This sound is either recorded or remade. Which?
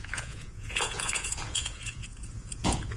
remade